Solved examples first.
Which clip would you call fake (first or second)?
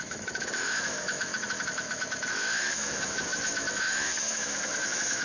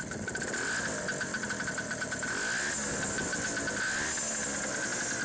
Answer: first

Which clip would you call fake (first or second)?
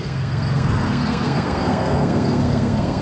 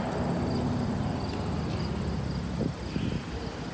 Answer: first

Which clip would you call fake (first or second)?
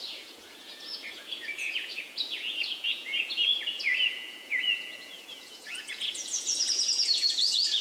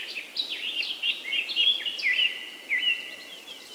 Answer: first